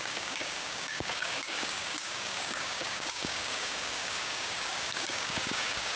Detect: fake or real fake